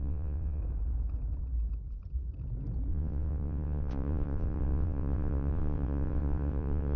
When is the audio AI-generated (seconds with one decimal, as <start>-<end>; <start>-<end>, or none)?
0.0-0.6; 2.9-7.0